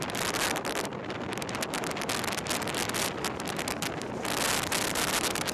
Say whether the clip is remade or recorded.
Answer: recorded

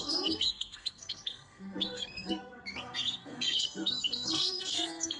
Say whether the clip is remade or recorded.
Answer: remade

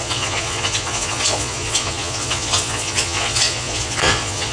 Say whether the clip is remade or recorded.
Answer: remade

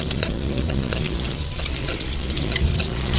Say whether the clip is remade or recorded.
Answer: remade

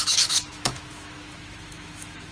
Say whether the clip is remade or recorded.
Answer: remade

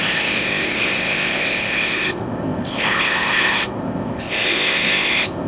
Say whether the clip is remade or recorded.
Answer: remade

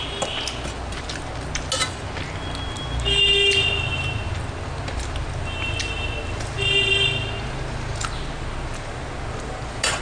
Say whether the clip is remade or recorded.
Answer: recorded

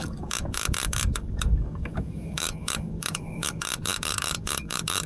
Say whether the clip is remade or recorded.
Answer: remade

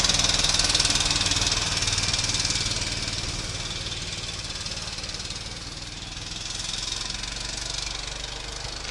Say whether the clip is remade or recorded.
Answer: recorded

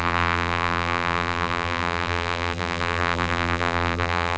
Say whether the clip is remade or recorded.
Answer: remade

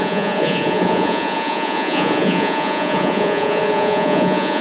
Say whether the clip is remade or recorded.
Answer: remade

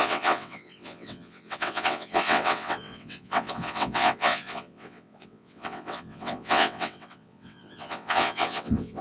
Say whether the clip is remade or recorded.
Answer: remade